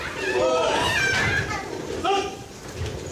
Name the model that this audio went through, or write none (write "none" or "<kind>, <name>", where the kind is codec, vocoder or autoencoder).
none